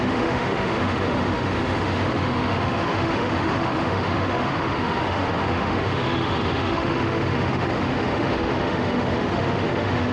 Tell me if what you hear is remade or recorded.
remade